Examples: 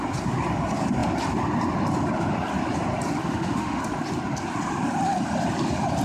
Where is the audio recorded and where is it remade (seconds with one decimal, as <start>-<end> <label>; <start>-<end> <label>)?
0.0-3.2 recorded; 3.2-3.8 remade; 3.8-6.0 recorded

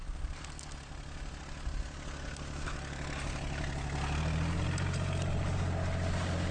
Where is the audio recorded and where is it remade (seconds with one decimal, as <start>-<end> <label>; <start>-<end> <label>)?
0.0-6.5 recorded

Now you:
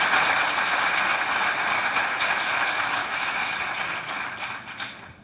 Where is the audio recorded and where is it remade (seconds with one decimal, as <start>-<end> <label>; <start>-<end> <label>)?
0.0-3.0 recorded; 3.0-3.6 remade; 3.6-5.2 recorded

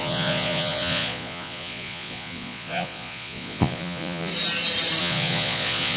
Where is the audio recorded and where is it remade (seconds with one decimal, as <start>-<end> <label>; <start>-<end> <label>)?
0.0-4.3 remade; 4.3-5.0 recorded; 5.0-6.0 remade

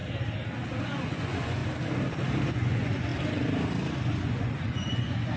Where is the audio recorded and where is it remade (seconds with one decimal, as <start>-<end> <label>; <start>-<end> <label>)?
0.0-0.8 recorded; 0.8-1.6 remade; 1.6-2.5 recorded; 2.5-3.1 remade; 3.1-4.2 recorded; 4.2-5.4 remade

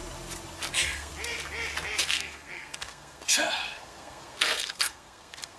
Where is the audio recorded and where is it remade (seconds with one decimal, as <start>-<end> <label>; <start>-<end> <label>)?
0.0-0.7 recorded; 0.7-1.1 remade; 1.1-2.0 recorded; 2.0-5.6 remade

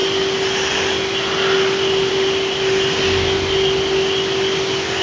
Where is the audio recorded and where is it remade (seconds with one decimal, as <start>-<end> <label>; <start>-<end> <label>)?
0.0-5.0 recorded

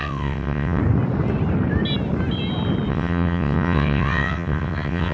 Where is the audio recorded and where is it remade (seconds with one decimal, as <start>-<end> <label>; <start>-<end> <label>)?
0.0-0.8 remade; 0.8-2.9 recorded; 2.9-5.1 remade